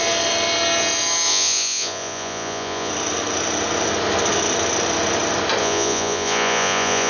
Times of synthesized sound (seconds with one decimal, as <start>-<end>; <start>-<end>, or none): 1.3-2.9; 5.6-7.1

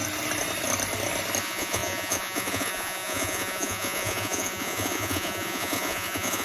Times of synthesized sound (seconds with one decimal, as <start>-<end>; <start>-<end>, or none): 1.4-6.4

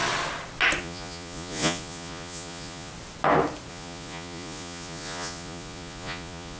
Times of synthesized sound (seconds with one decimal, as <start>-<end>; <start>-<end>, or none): 0.8-2.9; 3.7-6.6

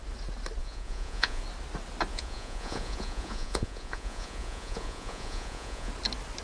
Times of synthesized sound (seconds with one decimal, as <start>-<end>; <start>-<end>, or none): 0.6-1.4; 2.1-5.9